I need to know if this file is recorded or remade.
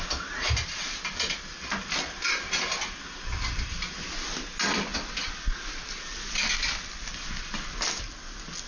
recorded